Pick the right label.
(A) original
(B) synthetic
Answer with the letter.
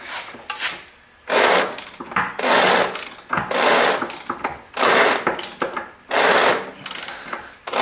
A